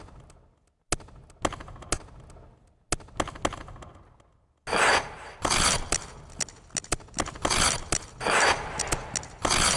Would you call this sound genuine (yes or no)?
yes